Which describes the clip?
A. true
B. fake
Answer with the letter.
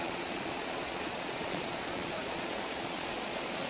B